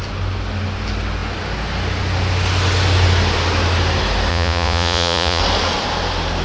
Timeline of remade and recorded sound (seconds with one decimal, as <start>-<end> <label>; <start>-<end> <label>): 0.0-4.3 recorded; 4.3-5.4 remade; 5.4-6.4 recorded